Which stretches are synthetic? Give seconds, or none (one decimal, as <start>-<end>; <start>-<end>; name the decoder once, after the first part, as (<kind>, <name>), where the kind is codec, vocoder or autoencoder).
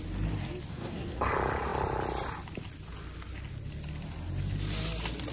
0.7-1.2 (codec, SNAC)